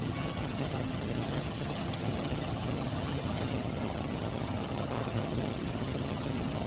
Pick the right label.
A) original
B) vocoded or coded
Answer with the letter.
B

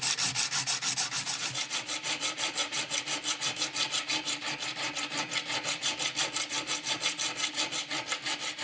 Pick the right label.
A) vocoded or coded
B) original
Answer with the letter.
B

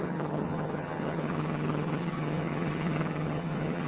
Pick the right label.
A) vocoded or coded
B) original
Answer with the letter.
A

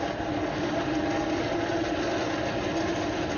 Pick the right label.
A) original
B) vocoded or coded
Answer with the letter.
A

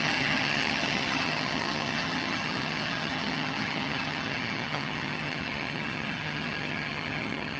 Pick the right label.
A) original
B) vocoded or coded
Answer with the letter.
B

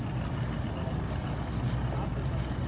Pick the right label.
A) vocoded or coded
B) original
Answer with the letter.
B